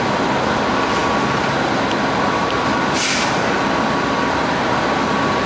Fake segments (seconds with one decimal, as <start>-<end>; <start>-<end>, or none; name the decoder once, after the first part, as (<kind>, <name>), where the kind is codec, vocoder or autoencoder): none

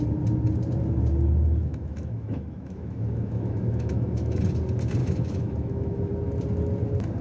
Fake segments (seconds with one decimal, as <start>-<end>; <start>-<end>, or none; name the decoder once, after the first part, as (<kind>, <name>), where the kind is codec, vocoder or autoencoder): 1.6-4.4 (autoencoder, DAC-VAE); 5.0-6.1

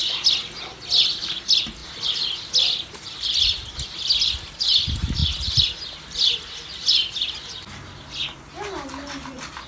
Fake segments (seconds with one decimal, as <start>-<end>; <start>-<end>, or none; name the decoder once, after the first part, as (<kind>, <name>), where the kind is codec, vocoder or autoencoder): none

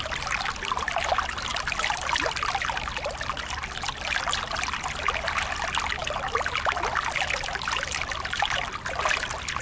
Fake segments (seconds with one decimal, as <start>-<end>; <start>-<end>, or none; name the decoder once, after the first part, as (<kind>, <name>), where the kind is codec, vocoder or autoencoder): none

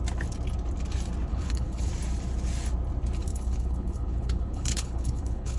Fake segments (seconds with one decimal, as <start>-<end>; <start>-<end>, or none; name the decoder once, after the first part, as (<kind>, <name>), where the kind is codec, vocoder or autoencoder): 1.3-1.9 (codec, HILCodec); 3.3-5.6

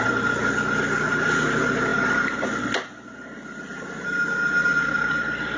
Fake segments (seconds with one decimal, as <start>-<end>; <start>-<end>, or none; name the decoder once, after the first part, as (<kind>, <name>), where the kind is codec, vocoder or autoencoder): none